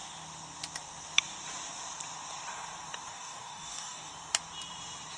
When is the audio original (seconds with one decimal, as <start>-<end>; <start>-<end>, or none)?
0.0-3.1; 4.1-5.2